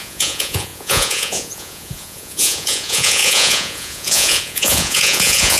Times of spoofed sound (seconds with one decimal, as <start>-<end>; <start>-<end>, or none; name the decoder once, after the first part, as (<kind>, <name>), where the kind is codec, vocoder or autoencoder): 0.0-5.6 (vocoder, Vocos)

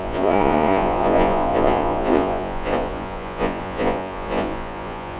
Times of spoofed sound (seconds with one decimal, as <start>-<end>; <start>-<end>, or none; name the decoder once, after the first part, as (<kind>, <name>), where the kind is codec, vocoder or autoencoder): 0.0-5.2 (vocoder, Vocos)

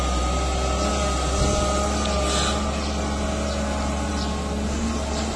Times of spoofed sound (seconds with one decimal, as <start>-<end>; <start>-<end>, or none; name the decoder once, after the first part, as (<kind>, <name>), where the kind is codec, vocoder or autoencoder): none

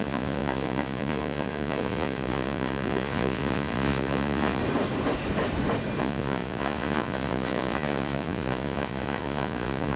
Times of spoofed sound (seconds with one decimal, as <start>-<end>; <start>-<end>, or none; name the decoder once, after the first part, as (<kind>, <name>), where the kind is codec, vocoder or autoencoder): 0.0-4.6 (vocoder, Vocos); 6.0-10.0

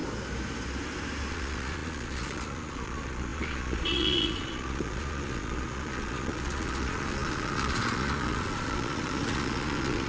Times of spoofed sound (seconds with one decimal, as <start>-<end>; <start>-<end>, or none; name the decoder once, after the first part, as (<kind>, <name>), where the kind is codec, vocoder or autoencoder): 1.3-10.1 (vocoder, Vocos)

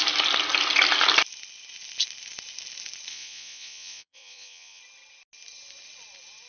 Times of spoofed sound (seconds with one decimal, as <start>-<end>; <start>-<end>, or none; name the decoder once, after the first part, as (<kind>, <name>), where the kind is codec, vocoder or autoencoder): 3.1-4.8 (vocoder, Vocos)

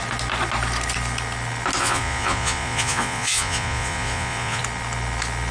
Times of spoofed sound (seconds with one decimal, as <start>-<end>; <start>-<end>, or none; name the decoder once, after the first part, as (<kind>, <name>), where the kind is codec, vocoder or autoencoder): 1.8-4.6 (vocoder, Vocos)

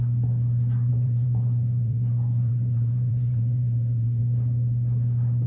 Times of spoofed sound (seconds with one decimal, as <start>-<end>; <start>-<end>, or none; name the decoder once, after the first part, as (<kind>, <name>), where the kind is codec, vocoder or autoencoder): 0.9-4.2 (vocoder, Vocos)